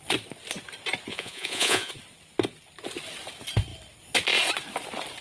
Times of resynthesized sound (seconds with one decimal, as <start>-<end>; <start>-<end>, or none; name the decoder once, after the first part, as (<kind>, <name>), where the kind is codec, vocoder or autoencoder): 1.1-1.9 (vocoder, Vocos)